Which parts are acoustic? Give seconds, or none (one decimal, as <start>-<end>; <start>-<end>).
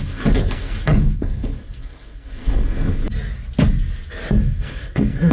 3.0-4.3